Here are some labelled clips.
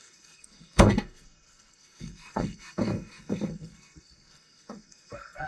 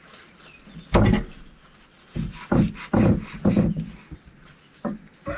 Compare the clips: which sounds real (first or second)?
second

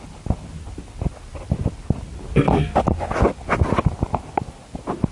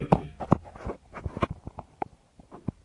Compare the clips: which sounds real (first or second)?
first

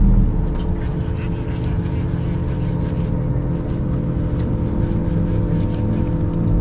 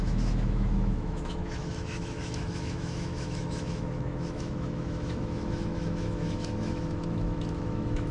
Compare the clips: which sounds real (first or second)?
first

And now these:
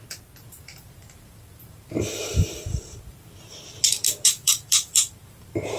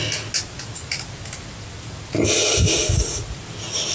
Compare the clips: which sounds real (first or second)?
second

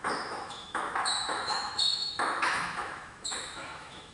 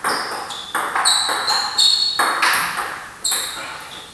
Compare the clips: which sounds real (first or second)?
second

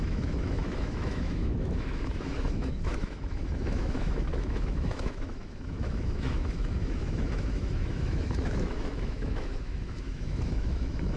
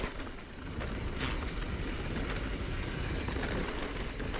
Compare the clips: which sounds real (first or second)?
second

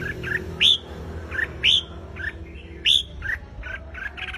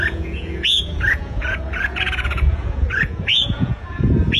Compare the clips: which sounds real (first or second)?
first